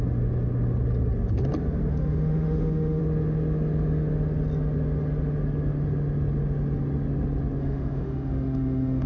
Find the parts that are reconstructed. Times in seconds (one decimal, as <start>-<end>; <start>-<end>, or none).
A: 1.9-3.0; 7.6-9.1